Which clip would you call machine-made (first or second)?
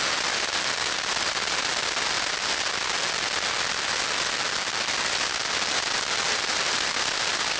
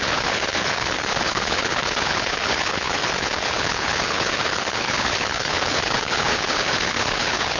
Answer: second